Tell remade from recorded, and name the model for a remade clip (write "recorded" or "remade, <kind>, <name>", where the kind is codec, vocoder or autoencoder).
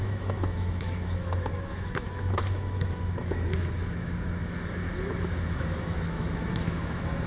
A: remade, autoencoder, DAC-VAE